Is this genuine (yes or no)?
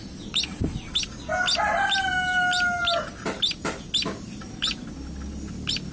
yes